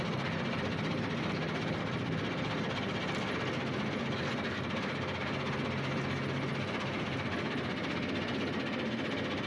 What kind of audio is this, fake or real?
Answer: real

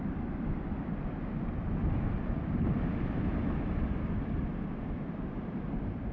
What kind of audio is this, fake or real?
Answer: real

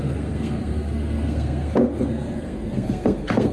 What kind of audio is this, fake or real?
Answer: fake